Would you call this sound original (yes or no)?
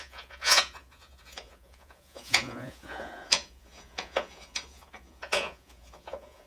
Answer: no